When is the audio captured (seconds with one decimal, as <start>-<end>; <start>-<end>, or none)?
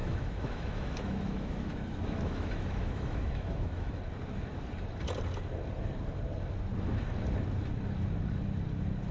3.9-9.1